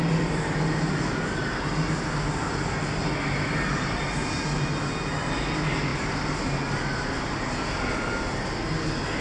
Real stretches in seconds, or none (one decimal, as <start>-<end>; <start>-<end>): 0.0-9.2